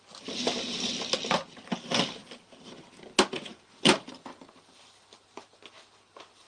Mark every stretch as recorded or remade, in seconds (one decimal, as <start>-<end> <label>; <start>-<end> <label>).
0.0-3.5 recorded; 3.5-5.6 remade; 5.6-6.5 recorded